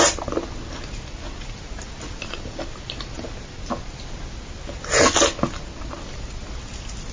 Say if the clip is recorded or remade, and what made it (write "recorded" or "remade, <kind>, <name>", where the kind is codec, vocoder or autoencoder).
recorded